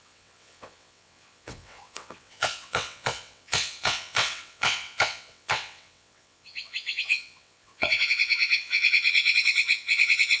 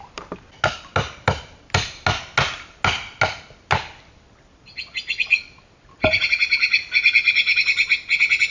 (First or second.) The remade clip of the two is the first